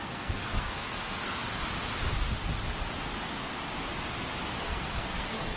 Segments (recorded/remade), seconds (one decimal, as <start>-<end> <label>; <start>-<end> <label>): 0.0-1.4 remade; 1.4-4.6 recorded; 4.6-5.6 remade

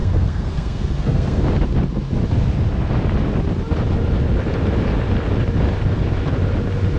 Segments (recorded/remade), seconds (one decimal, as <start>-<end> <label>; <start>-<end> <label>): 0.0-1.4 remade; 1.4-7.0 recorded

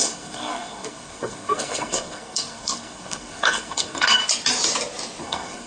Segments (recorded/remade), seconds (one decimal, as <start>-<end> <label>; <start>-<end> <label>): 0.0-4.2 remade; 4.2-5.2 recorded; 5.2-5.7 remade